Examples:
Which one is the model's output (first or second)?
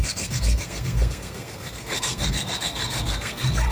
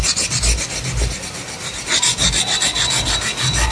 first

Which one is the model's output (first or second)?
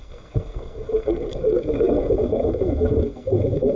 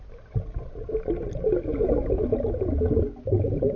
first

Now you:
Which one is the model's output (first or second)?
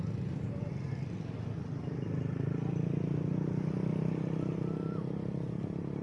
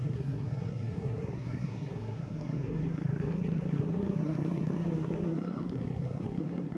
second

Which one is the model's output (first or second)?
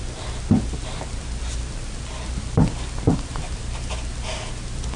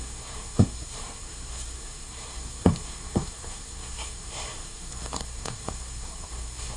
second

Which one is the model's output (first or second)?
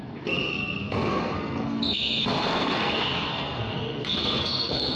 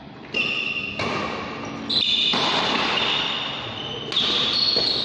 first